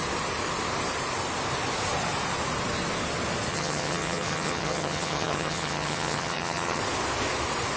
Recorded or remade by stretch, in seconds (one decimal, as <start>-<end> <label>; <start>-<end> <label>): 0.0-3.5 recorded; 3.5-6.8 remade; 6.8-7.8 recorded